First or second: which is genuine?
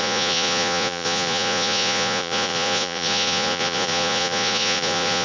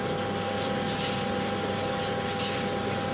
second